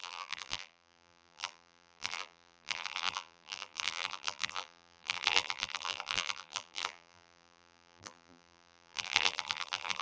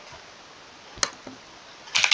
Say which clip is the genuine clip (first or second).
second